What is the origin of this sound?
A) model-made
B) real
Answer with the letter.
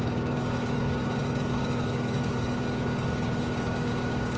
A